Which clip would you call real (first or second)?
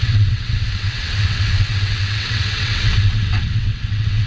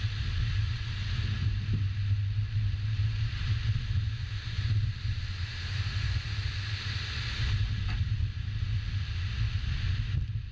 second